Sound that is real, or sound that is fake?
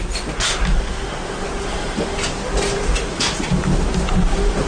real